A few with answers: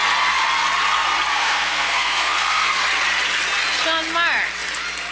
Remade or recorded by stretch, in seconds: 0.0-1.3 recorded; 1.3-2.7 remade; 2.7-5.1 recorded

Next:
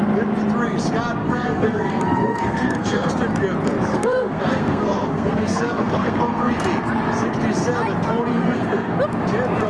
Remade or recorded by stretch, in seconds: 0.0-1.2 recorded; 1.2-3.1 remade; 3.1-3.9 recorded; 3.9-6.5 remade; 6.5-8.3 recorded; 8.3-9.0 remade; 9.0-9.7 recorded

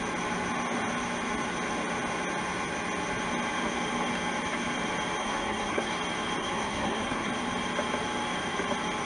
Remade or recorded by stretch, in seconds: 0.0-5.2 recorded; 5.2-5.9 remade; 5.9-6.4 recorded; 6.4-7.3 remade; 7.3-9.1 recorded

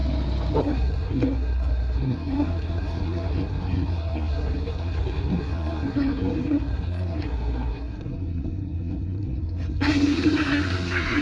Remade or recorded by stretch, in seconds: 0.0-0.6 recorded; 0.6-11.2 remade

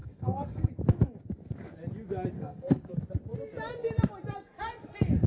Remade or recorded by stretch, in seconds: 0.0-0.7 remade; 0.7-2.3 recorded; 2.3-2.9 remade; 2.9-5.3 recorded

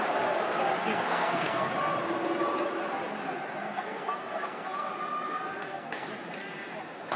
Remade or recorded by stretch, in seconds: 0.0-0.8 recorded; 0.8-1.7 remade; 1.7-3.6 recorded; 3.6-4.9 remade; 4.9-5.6 recorded; 5.6-6.1 remade; 6.1-7.2 recorded